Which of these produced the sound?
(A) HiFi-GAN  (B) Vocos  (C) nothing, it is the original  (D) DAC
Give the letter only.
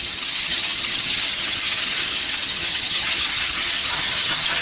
A